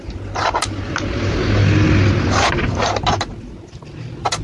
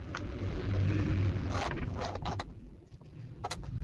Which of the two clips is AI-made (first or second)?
second